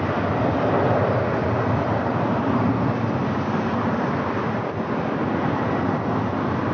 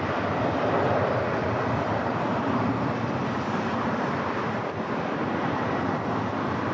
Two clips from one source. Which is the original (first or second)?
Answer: first